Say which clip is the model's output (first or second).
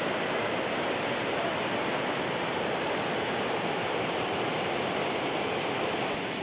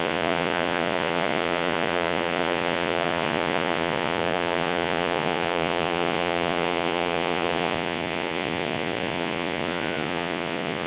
second